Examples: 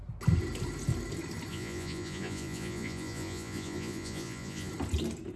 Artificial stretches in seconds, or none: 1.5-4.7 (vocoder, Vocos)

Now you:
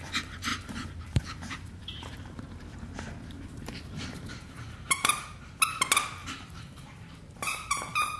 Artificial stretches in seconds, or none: 0.5-5.4 (vocoder, BigVGAN v2); 6.2-8.2